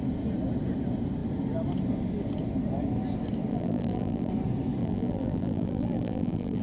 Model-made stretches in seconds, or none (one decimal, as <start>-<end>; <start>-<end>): 3.5-4.3; 4.8-6.6